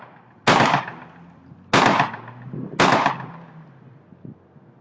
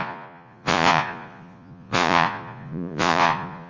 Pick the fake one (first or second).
second